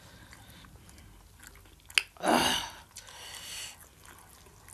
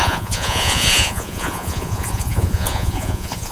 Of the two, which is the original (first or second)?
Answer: first